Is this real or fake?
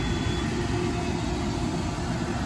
real